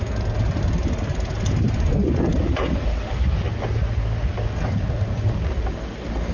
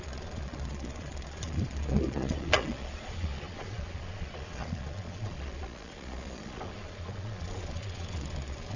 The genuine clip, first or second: first